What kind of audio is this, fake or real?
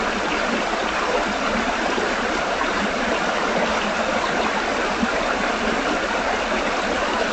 fake